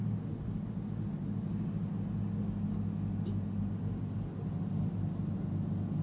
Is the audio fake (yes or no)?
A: no